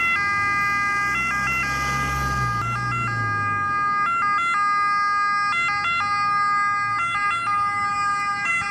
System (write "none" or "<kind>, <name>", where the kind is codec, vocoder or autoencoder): none